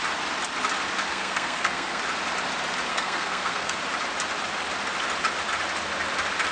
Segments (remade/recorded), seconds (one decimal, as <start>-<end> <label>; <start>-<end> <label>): 0.0-1.1 recorded; 1.1-2.0 remade; 2.0-2.9 recorded; 2.9-3.8 remade; 3.8-6.5 recorded